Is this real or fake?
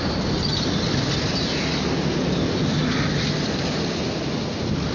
real